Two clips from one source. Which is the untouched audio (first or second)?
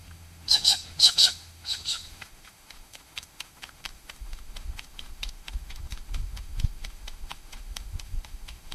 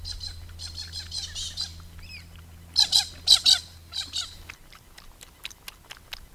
second